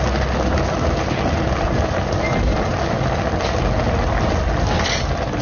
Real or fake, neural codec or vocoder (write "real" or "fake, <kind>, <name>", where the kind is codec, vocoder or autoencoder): real